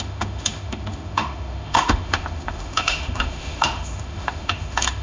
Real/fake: fake